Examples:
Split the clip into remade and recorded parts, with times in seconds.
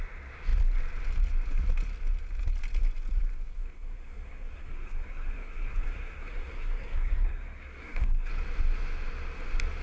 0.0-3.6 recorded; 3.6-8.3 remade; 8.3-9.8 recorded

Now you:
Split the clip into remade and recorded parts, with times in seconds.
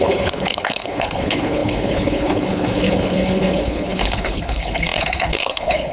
0.0-5.9 remade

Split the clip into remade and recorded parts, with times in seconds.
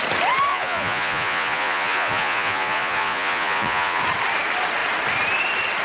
0.0-0.5 recorded; 0.5-4.0 remade; 4.0-5.8 recorded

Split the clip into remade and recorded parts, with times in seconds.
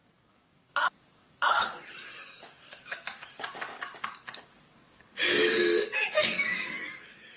0.0-7.4 remade